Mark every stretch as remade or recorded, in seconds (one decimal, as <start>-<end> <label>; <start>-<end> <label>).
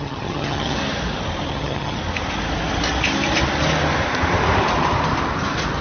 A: 0.0-0.8 remade; 0.8-1.5 recorded; 1.5-2.0 remade; 2.0-5.8 recorded